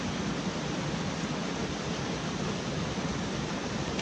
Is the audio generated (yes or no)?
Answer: no